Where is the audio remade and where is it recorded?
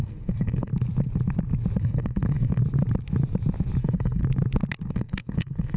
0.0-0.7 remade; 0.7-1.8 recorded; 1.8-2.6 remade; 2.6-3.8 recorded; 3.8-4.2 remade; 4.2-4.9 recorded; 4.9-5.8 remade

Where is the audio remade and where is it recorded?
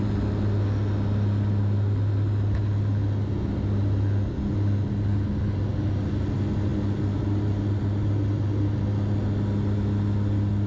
0.0-10.7 recorded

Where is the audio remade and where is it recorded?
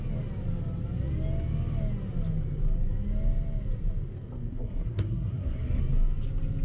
0.0-4.5 recorded; 4.5-5.8 remade; 5.8-6.6 recorded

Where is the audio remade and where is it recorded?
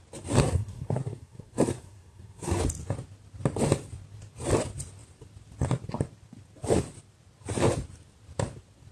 0.0-0.4 recorded; 0.4-2.6 remade; 2.6-8.9 recorded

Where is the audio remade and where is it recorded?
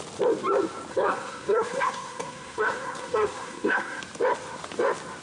0.0-0.9 recorded; 0.9-4.0 remade; 4.0-5.2 recorded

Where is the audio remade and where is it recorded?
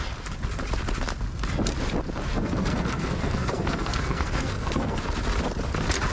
0.0-2.3 recorded; 2.3-5.0 remade; 5.0-6.1 recorded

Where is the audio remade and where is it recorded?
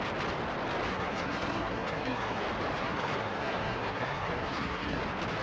0.0-0.9 recorded; 0.9-2.4 remade; 2.4-2.8 recorded; 2.8-5.0 remade; 5.0-5.4 recorded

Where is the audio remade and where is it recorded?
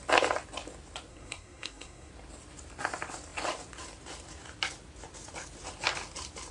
0.0-1.1 recorded; 1.1-2.1 remade; 2.1-6.5 recorded